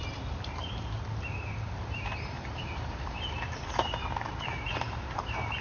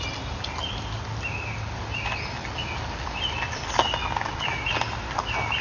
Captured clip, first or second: second